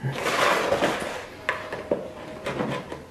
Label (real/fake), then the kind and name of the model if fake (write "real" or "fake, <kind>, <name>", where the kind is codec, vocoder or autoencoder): real